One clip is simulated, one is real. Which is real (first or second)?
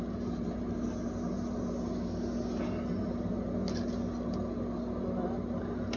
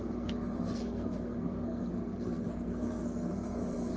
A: first